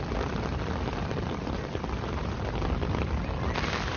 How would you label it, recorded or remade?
recorded